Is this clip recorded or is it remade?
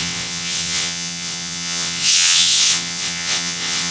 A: remade